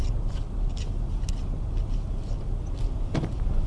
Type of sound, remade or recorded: recorded